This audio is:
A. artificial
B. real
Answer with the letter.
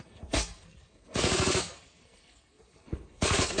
A